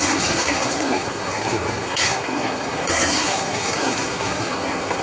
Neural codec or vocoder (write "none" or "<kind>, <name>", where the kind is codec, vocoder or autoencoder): codec, SNAC